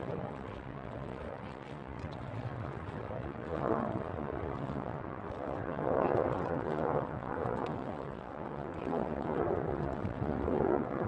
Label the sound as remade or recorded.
remade